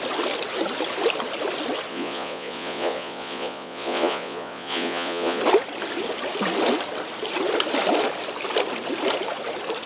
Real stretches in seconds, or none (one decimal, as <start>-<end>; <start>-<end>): 0.0-1.9; 5.4-9.9